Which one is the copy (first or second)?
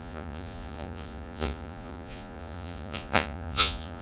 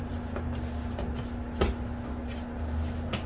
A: first